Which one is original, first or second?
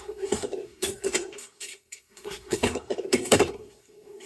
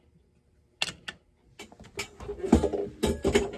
second